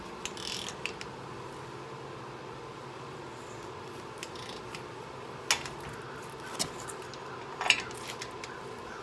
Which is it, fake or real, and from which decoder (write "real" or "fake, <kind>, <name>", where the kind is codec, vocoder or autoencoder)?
real